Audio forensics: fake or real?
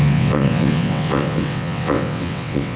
fake